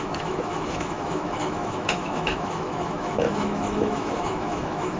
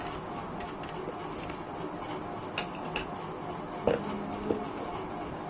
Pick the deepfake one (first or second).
first